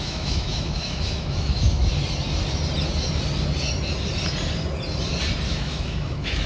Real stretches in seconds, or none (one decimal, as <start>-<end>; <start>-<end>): 1.9-5.5